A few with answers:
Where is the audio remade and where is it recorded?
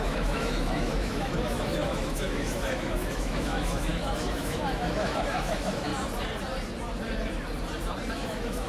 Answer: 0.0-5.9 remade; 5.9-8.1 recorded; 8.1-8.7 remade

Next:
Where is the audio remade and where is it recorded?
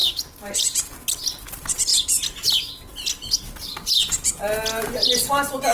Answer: 0.0-5.7 recorded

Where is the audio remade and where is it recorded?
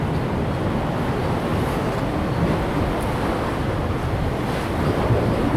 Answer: 0.0-5.6 recorded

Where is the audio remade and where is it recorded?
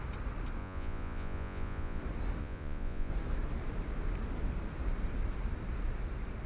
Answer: 0.0-0.6 recorded; 0.6-2.0 remade; 2.0-2.4 recorded; 2.4-3.1 remade; 3.1-6.5 recorded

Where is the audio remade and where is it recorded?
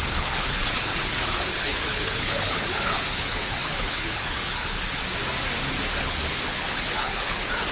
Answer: 0.0-5.0 remade; 5.0-6.0 recorded; 6.0-7.7 remade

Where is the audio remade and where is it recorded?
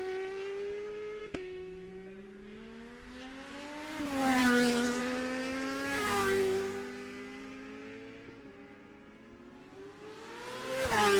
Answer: 0.0-1.2 recorded; 1.2-1.9 remade; 1.9-4.4 recorded; 4.4-5.0 remade; 5.0-5.4 recorded; 5.4-6.7 remade; 6.7-11.2 recorded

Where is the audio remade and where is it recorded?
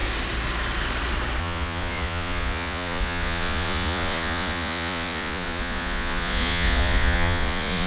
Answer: 0.0-1.4 recorded; 1.4-7.9 remade